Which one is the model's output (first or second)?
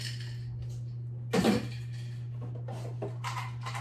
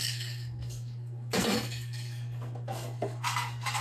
second